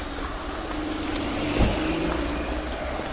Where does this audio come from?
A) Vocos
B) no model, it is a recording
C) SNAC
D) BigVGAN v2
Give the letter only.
B